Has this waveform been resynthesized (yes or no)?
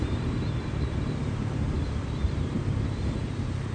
yes